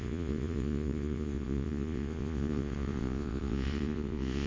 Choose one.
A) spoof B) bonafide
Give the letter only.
A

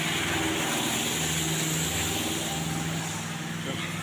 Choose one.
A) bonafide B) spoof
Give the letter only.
A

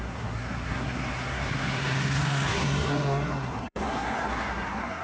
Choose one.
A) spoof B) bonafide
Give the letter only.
A